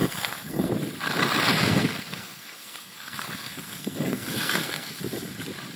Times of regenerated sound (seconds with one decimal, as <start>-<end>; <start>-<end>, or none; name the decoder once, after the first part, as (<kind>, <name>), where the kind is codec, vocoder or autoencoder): 0.0-0.7 (codec, SNAC); 1.5-5.0